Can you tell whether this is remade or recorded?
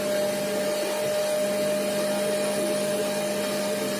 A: recorded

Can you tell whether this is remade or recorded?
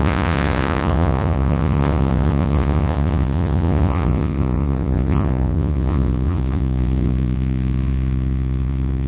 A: remade